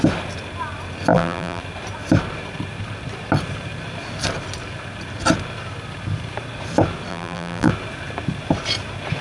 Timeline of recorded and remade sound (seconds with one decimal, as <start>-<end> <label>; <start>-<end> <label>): 0.0-1.1 recorded; 1.1-1.6 remade; 1.6-7.1 recorded; 7.1-7.7 remade; 7.7-9.2 recorded